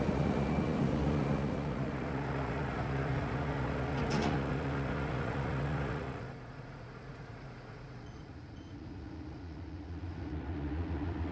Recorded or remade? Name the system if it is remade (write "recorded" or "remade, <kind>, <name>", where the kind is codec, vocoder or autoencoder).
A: remade, vocoder, Vocos